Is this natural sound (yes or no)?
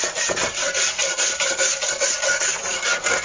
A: yes